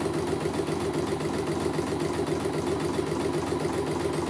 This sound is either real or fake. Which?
real